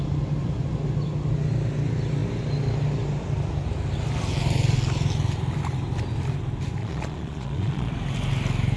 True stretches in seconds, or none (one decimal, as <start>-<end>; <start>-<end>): 0.0-6.8; 7.9-8.8